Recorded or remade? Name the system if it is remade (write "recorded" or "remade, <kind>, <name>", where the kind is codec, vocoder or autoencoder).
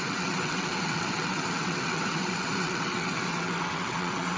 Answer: remade, vocoder, WaveNeXt